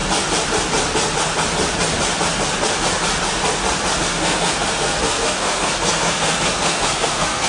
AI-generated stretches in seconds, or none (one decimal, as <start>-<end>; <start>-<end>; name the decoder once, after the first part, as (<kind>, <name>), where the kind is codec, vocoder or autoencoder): 4.0-7.5 (codec, SNAC)